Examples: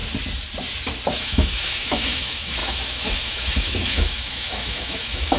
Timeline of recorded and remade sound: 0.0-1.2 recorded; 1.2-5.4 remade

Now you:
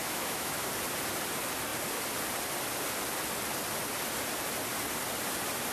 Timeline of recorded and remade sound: 0.0-0.7 remade; 0.7-5.7 recorded

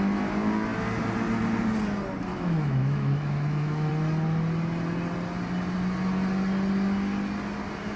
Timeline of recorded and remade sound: 0.0-2.3 recorded; 2.3-3.9 remade; 3.9-8.0 recorded

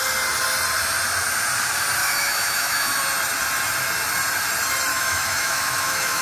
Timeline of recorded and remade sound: 0.0-2.0 recorded; 2.0-3.0 remade; 3.0-4.9 recorded; 4.9-6.2 remade

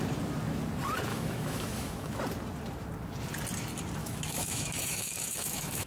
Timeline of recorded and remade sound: 0.0-1.1 recorded; 1.1-2.2 remade; 2.2-4.0 recorded; 4.0-5.9 remade